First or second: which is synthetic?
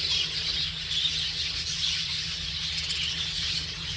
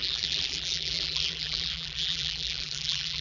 second